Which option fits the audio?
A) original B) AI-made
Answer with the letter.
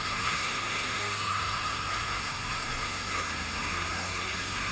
B